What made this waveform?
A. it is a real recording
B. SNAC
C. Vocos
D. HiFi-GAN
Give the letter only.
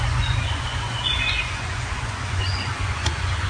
C